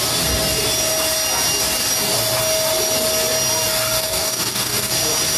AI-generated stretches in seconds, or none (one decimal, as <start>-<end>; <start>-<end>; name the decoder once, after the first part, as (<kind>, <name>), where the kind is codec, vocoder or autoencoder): 4.0-4.9 (codec, DAC)